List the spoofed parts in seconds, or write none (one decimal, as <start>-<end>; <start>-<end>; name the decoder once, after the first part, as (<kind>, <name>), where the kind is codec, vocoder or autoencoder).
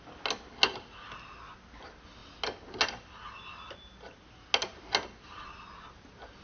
none